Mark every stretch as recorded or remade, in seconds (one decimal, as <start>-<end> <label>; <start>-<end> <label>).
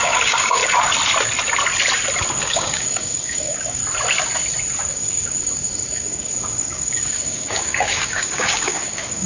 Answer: 0.0-0.6 remade; 0.6-2.4 recorded; 2.4-3.8 remade; 3.8-4.9 recorded; 4.9-9.3 remade